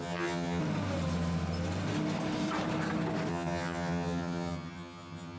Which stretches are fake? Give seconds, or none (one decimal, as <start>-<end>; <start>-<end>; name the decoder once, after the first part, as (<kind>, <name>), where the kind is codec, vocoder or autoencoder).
0.0-0.6 (vocoder, HiFi-GAN); 3.3-5.4